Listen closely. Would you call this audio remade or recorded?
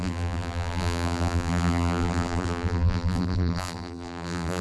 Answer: remade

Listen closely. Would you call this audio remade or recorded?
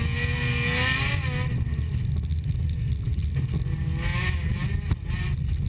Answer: recorded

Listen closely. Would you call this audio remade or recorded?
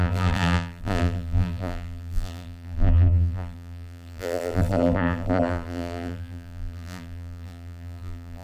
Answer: remade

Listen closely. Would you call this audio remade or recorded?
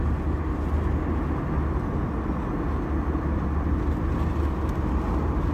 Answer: recorded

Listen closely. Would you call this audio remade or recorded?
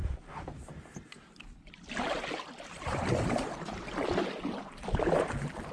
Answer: recorded